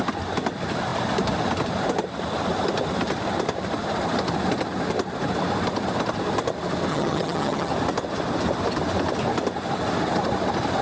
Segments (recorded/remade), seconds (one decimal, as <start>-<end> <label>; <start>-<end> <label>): 0.0-6.9 recorded; 6.9-7.7 remade; 7.7-10.8 recorded